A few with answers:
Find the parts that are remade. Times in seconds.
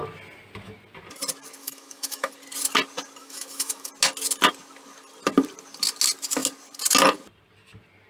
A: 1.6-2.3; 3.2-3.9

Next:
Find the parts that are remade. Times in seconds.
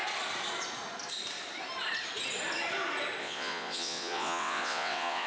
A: 3.2-5.3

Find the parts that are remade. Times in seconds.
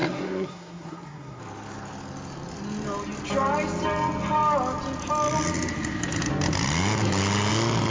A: 0.0-1.4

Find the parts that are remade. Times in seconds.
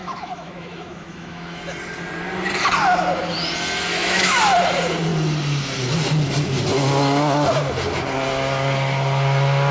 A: 0.0-1.6; 3.9-4.4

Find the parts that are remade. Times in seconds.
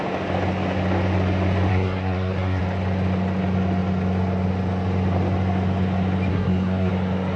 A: 1.7-2.6; 6.3-6.9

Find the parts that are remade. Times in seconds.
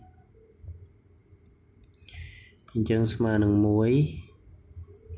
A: none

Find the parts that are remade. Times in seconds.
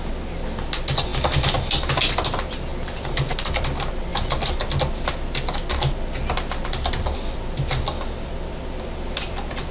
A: none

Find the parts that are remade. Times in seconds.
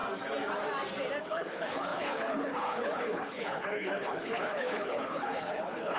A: 1.2-6.0